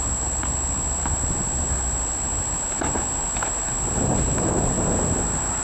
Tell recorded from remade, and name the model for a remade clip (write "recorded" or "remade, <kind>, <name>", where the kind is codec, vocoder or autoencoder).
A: recorded